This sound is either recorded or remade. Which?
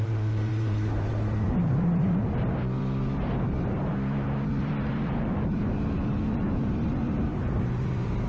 remade